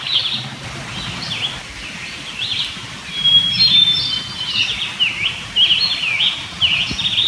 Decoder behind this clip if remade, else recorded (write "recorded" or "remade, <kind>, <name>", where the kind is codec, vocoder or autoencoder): recorded